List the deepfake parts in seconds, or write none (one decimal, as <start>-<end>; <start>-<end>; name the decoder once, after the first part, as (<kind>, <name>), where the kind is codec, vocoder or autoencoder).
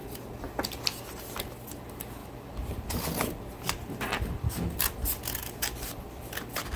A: none